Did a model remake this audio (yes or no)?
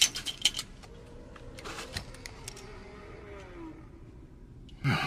no